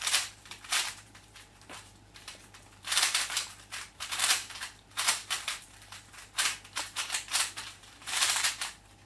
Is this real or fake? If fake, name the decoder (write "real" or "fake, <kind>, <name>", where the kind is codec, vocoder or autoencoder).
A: fake, vocoder, BigVGAN v2